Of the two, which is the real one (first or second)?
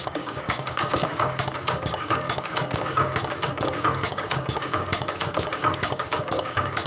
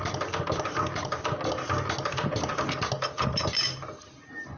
second